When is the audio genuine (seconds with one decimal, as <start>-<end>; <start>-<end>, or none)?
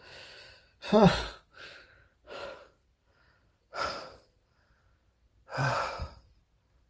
0.0-2.8; 4.8-5.5; 6.4-6.9